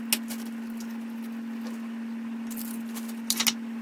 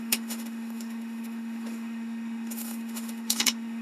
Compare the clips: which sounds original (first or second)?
first